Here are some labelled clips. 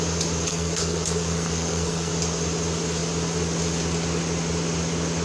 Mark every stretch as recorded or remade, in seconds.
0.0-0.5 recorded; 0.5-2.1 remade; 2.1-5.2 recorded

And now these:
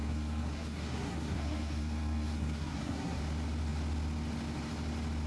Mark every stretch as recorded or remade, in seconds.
0.0-3.2 remade; 3.2-5.3 recorded

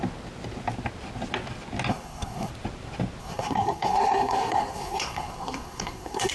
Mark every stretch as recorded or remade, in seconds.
0.0-1.9 recorded; 1.9-2.5 remade; 2.5-3.2 recorded; 3.2-6.3 remade

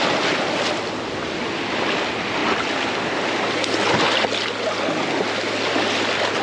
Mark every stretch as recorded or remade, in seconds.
0.0-6.4 recorded

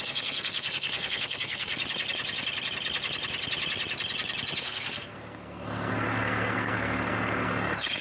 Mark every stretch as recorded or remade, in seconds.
0.0-1.7 remade; 1.7-4.6 recorded; 4.6-8.0 remade

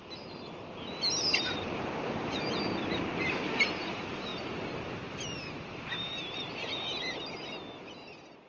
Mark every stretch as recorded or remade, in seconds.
0.0-8.5 recorded